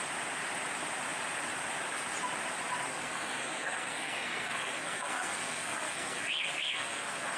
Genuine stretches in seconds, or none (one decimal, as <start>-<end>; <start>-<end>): 0.0-2.9

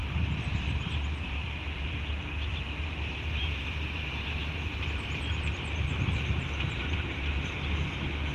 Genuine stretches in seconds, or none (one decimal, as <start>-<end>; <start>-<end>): 1.9-2.5; 7.5-8.3